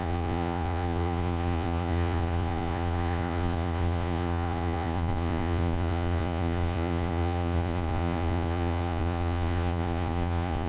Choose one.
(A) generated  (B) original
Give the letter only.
A